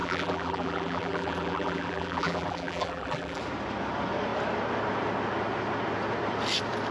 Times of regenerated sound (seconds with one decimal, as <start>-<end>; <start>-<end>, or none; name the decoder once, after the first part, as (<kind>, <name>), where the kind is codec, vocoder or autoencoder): 0.0-3.4 (vocoder, BigVGAN v2)